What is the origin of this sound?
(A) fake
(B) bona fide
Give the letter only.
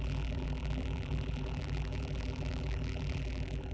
A